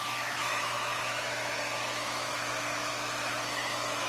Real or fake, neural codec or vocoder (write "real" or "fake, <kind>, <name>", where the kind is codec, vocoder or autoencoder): fake, autoencoder, DAC-VAE